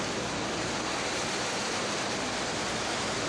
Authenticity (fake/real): real